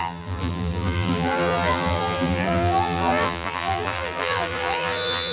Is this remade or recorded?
remade